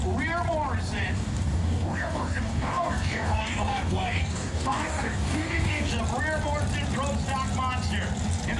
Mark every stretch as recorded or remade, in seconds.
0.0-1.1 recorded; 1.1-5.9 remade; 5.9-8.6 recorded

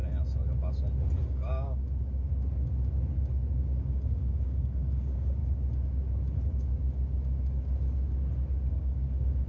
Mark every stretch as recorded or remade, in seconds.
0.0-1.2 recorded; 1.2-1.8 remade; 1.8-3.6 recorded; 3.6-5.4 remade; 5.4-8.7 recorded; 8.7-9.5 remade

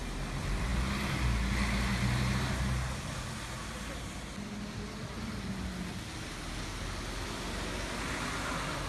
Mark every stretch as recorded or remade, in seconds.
0.0-8.9 recorded

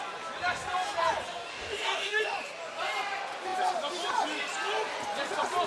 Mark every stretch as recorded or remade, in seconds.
0.0-1.5 recorded; 1.5-2.2 remade; 2.2-5.7 recorded

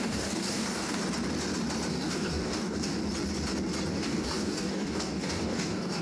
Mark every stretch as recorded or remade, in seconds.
0.0-1.0 remade; 1.0-1.9 recorded; 1.9-3.0 remade; 3.0-3.9 recorded; 3.9-6.0 remade

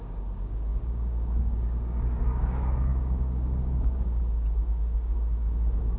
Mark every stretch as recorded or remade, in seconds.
0.0-6.0 remade

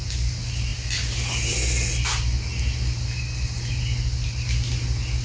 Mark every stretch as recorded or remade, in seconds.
0.0-5.2 recorded

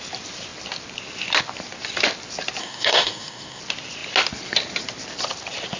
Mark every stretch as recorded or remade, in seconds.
0.0-2.6 recorded; 2.6-3.6 remade; 3.6-5.8 recorded